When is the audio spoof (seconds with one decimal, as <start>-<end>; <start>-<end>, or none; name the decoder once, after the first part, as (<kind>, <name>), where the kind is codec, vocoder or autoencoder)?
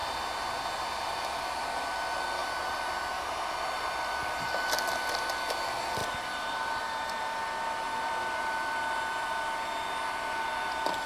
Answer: 2.4-3.1 (vocoder, BigVGAN v2); 6.0-9.3